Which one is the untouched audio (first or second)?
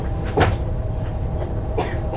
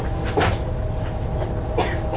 second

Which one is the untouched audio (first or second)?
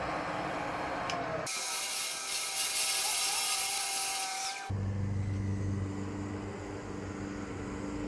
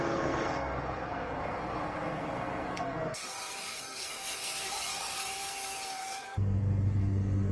first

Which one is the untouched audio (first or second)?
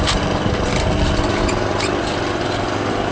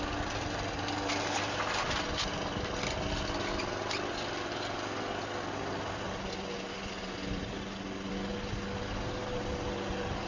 second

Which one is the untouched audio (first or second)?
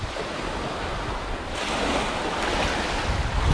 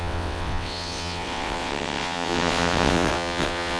first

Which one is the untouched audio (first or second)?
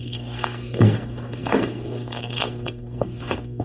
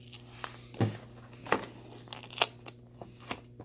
second